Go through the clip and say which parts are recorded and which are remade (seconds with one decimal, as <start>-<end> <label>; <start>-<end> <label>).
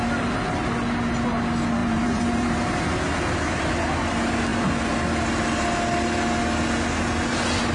0.0-1.8 recorded; 1.8-2.8 remade; 2.8-7.7 recorded